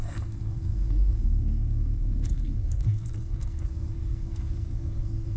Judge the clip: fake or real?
fake